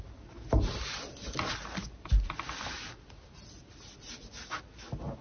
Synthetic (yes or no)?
no